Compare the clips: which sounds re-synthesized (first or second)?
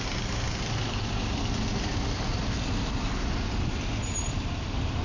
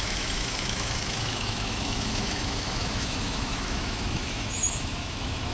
second